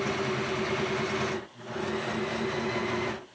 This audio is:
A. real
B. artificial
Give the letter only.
A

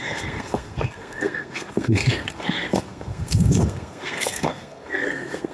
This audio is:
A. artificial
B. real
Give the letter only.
A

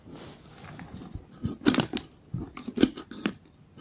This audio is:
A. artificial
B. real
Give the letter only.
B